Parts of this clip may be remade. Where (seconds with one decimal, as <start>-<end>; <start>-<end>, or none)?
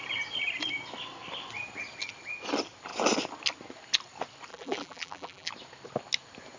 4.5-5.5